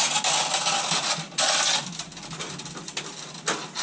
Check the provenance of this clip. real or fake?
real